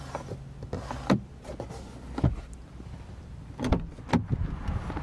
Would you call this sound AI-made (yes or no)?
no